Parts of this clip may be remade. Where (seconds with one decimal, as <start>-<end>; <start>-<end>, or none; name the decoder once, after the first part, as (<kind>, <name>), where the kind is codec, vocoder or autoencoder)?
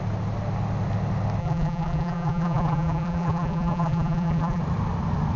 1.4-4.6 (vocoder, BigVGAN v2)